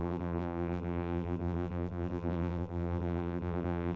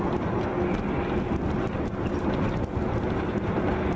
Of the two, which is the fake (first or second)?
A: first